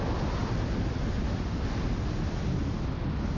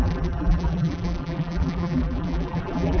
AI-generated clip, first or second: second